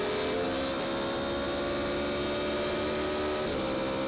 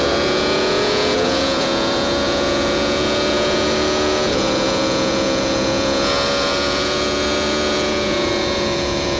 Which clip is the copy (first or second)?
second